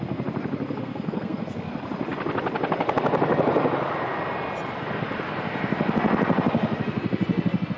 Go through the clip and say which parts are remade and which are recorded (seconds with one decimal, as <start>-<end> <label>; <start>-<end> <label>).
0.0-0.8 recorded; 0.8-1.7 remade; 1.7-7.8 recorded